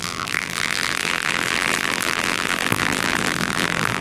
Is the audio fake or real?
fake